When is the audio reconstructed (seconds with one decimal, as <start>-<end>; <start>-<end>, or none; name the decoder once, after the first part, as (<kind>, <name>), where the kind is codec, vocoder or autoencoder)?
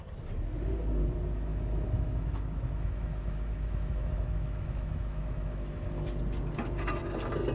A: 1.5-6.0 (autoencoder, DAC-VAE)